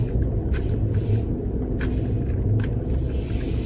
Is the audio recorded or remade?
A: recorded